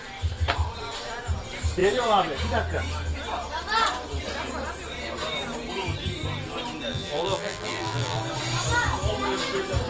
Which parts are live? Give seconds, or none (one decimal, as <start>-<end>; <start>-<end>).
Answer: 0.0-6.9; 8.2-9.9